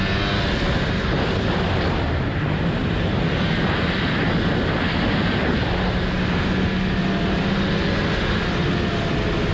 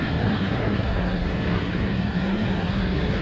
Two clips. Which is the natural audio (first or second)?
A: first